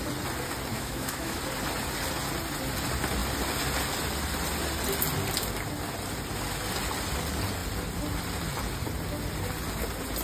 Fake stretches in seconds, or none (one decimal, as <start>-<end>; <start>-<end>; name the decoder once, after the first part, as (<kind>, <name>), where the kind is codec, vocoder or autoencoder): 0.7-1.4 (autoencoder, DAC-VAE)

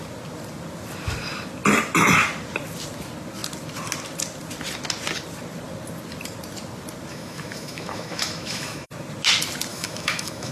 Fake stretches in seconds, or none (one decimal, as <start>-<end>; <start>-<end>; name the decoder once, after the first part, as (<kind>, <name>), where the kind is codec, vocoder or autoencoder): 7.1-8.9 (autoencoder, DAC-VAE); 9.7-10.5